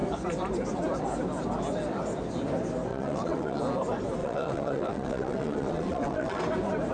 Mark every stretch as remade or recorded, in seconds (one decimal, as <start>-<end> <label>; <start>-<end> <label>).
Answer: 0.0-2.9 recorded; 2.9-3.6 remade; 3.6-4.2 recorded; 4.2-6.4 remade; 6.4-6.9 recorded